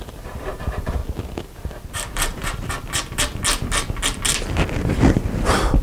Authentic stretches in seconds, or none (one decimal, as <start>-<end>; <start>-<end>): 1.0-1.9; 2.4-5.8